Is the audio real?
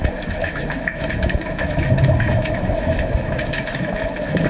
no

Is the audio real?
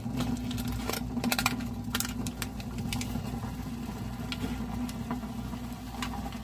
yes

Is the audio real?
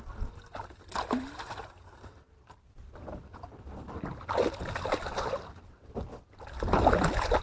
yes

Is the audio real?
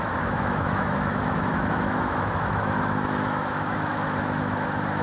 no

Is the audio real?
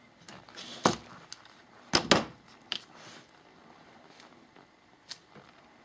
yes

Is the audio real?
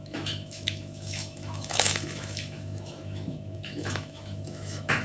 no